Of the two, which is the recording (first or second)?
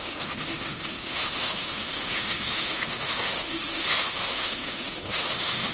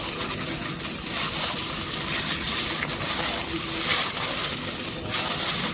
second